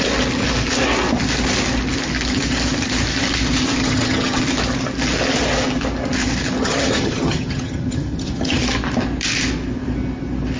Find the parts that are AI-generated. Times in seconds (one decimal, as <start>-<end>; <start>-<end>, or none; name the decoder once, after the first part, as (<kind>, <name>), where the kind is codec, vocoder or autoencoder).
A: 3.8-4.4 (vocoder, HiFi-GAN); 6.6-8.6